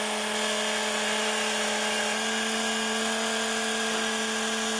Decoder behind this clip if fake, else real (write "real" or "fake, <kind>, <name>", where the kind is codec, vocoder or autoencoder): real